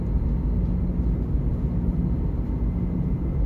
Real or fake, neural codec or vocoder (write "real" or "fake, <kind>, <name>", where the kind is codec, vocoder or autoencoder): real